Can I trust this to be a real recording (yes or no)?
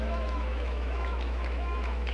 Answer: no